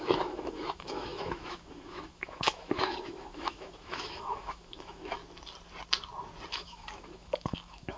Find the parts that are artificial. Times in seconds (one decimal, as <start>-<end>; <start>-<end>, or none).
0.0-5.2; 6.5-8.0